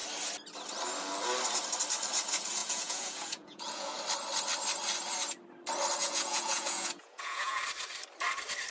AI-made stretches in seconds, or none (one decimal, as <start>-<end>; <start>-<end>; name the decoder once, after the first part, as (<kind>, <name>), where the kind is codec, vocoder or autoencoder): 2.6-4.0 (vocoder, Vocos); 6.0-7.6